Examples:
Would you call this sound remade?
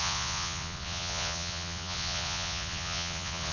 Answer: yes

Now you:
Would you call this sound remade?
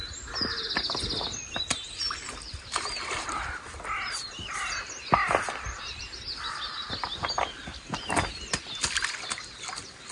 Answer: no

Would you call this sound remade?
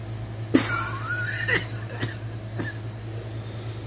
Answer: no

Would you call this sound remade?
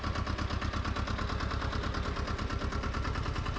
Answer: no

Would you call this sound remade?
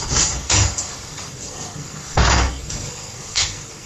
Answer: yes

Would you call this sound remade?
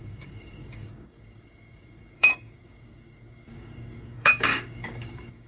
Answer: yes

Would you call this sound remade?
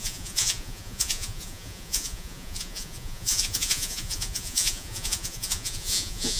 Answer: yes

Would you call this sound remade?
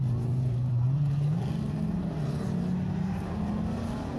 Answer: no